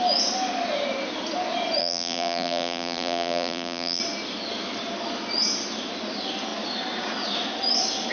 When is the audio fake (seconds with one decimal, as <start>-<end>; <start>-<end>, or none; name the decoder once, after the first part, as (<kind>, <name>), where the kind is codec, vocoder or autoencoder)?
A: 1.8-4.0 (vocoder, BigVGAN v2)